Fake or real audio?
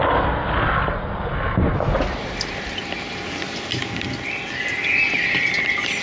real